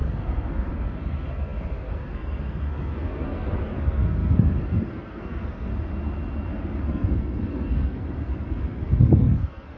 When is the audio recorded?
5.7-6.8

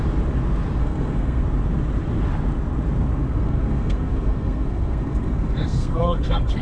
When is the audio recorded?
0.0-0.8; 1.4-3.2